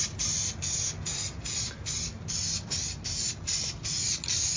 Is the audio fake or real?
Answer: real